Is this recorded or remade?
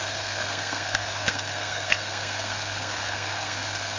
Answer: remade